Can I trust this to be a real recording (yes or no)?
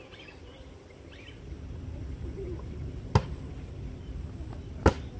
yes